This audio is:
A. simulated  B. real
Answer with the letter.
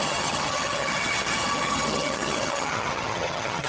A